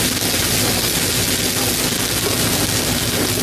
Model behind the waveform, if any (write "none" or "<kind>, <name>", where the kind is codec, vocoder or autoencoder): none